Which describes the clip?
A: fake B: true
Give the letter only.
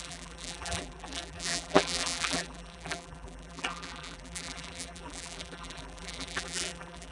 A